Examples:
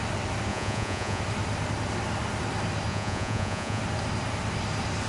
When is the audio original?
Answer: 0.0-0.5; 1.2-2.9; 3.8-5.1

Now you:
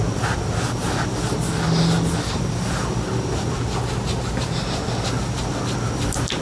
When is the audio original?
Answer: 0.0-6.4

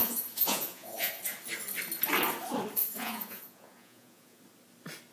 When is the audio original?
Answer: 1.1-2.8; 4.4-5.1

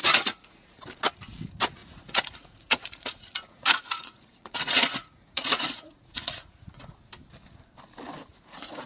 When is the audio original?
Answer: 0.8-1.8; 7.0-8.3

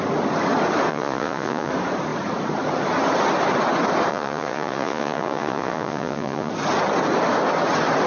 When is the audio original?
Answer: 0.0-0.9; 1.7-4.1; 6.5-8.1

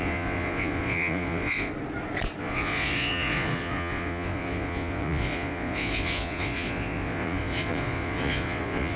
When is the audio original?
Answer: 1.7-2.4

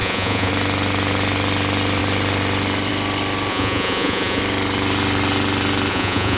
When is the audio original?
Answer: 0.5-3.5; 4.4-5.9

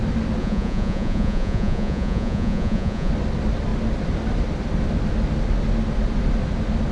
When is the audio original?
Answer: 0.0-0.4; 3.1-6.9